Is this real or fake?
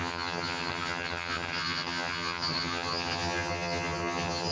fake